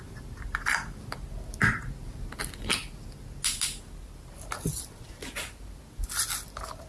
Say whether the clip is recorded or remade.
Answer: recorded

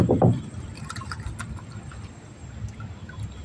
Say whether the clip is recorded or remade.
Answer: recorded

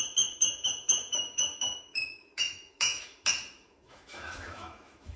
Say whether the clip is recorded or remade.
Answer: remade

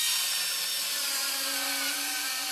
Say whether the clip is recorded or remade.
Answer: recorded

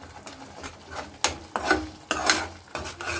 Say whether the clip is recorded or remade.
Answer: recorded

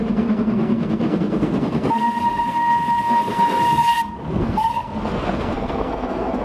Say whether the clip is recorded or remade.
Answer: remade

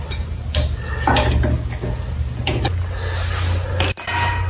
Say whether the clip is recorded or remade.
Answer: recorded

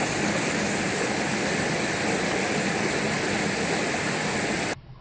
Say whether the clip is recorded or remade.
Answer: recorded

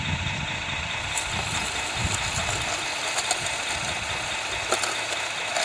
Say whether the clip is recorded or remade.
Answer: recorded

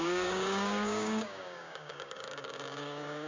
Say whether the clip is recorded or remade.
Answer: remade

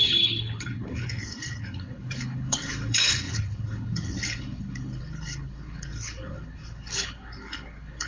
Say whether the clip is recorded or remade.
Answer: remade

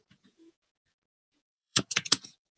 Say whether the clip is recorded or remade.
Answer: remade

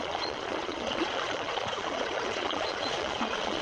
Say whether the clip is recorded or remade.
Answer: remade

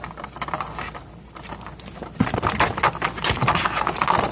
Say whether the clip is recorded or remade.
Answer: recorded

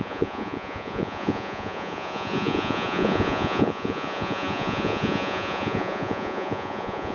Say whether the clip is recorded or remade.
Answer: remade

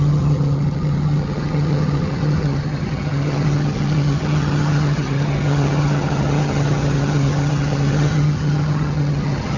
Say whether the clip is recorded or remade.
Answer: remade